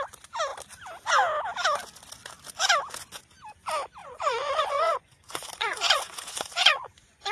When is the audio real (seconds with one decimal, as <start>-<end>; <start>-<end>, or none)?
0.0-4.0